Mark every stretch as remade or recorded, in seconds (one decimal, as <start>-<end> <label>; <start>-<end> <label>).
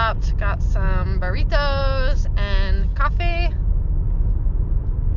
0.0-5.2 recorded